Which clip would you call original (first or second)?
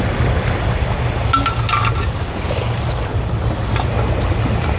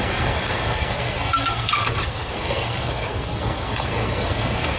first